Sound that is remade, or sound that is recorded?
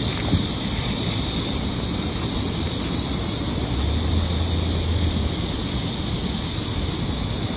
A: recorded